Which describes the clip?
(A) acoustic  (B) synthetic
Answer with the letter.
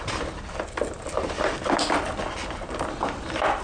A